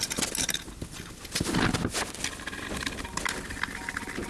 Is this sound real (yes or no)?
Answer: yes